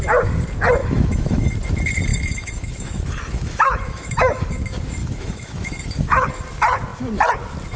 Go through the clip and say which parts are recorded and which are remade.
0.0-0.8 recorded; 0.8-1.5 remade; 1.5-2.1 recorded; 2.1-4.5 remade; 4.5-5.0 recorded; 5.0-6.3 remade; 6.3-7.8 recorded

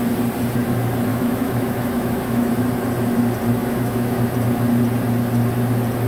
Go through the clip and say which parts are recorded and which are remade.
0.0-1.1 recorded; 1.1-2.5 remade; 2.5-3.6 recorded; 3.6-4.2 remade; 4.2-6.1 recorded

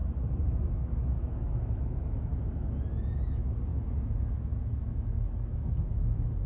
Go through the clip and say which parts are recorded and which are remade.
0.0-0.5 recorded; 0.5-2.3 remade; 2.3-2.9 recorded; 2.9-6.5 remade

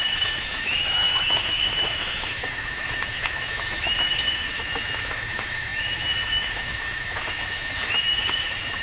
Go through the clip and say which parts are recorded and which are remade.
0.0-8.8 remade

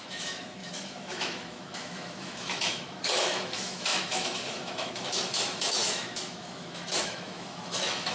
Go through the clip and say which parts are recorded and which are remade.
0.0-8.1 remade

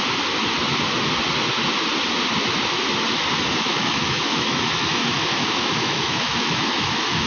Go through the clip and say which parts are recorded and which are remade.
0.0-3.7 recorded; 3.7-7.3 remade